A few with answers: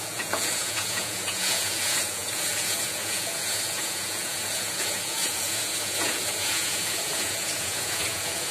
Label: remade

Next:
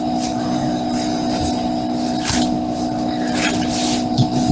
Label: recorded